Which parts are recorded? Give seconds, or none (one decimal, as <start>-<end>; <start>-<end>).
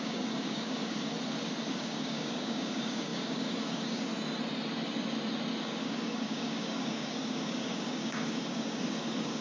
1.1-1.7; 4.1-5.6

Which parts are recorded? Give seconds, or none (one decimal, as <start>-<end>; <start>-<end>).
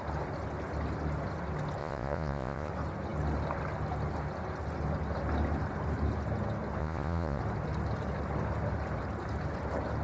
0.0-1.8; 2.7-6.8; 7.4-10.0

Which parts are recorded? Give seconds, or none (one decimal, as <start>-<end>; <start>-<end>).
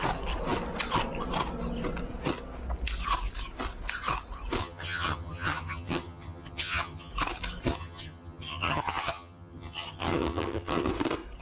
0.0-4.6; 7.1-7.7; 10.9-11.4